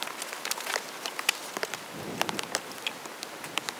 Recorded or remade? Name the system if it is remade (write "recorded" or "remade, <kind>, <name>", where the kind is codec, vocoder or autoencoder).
recorded